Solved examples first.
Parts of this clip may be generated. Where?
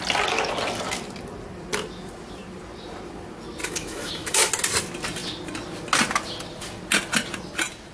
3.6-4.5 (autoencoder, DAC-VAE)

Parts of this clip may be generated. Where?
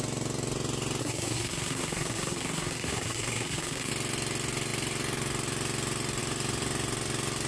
1.0-3.9 (codec, SNAC)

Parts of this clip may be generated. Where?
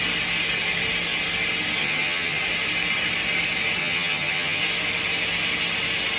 1.8-2.4 (vocoder, HiFi-GAN); 3.8-4.6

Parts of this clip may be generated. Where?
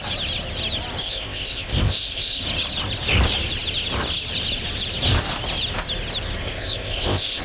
1.0-2.4 (codec, ZipCodec); 6.4-7.4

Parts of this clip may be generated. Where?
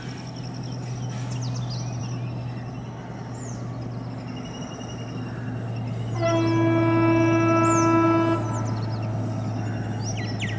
none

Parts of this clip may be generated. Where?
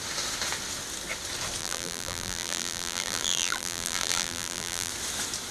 1.6-4.9 (vocoder, BigVGAN v2)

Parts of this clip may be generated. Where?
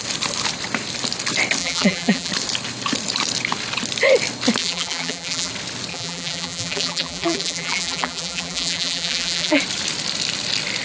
1.6-2.3 (vocoder, BigVGAN v2); 4.6-5.5; 5.9-9.6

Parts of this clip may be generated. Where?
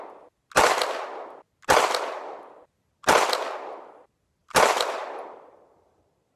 4.4-6.0 (vocoder, BigVGAN v2)